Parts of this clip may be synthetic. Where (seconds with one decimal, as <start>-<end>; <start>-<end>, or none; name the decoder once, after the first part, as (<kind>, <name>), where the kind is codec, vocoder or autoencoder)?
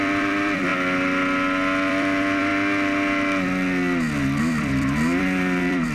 0.0-0.7 (vocoder, BigVGAN v2); 1.9-2.5; 4.4-5.9